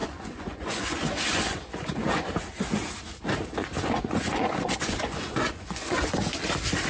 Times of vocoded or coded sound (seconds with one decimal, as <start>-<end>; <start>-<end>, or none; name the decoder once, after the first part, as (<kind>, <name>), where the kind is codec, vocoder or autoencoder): 0.0-2.3 (vocoder, Vocos); 3.6-6.1